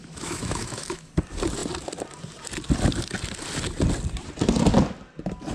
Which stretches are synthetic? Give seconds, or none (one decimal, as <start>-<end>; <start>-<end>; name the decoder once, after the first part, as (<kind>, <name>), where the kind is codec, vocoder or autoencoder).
0.0-1.1 (autoencoder, DAC-VAE)

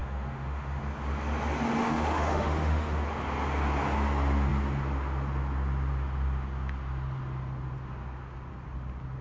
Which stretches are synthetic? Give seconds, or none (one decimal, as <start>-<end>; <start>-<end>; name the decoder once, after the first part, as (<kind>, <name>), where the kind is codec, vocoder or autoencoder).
0.0-0.8 (autoencoder, DAC-VAE); 1.8-3.0

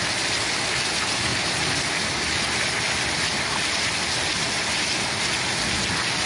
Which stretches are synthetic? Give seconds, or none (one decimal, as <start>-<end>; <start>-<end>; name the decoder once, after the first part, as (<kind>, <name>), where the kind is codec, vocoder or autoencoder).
none

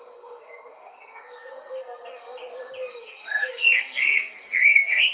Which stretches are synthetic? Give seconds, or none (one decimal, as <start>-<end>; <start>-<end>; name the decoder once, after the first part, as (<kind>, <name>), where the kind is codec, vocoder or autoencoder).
0.0-2.4 (codec, SNAC); 2.9-5.1

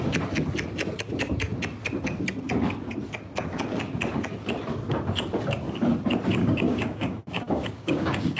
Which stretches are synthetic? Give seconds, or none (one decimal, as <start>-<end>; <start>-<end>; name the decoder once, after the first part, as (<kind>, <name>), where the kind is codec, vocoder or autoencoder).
6.4-8.4 (codec, DAC)

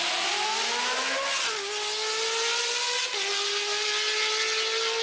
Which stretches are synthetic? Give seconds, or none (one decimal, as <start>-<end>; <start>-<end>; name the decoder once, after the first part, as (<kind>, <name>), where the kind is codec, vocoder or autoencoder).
none

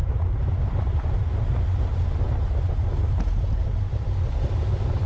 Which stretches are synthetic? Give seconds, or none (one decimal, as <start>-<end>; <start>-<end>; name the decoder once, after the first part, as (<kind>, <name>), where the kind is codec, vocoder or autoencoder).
none

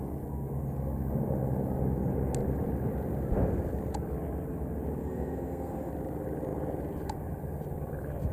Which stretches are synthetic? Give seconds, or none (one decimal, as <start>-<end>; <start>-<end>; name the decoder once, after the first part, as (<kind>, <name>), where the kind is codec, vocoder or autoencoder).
5.0-5.9 (codec, SNAC)